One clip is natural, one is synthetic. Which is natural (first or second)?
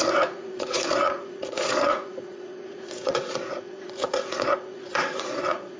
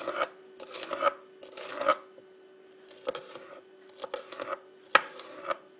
second